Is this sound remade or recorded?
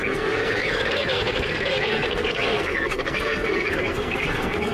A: remade